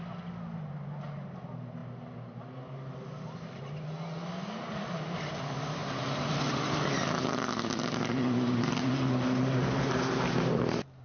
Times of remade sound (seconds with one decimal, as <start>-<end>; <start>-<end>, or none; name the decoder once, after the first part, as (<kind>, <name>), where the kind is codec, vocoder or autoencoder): none